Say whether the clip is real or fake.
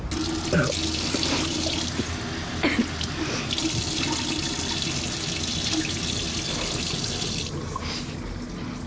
real